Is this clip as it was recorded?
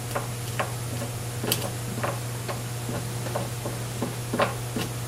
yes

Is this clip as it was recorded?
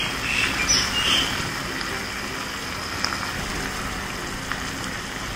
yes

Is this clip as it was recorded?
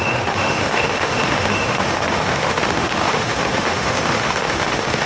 no